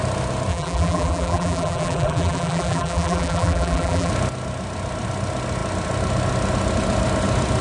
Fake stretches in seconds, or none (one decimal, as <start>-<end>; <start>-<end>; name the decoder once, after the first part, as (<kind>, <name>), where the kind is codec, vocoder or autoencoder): 0.5-4.1 (vocoder, BigVGAN v2)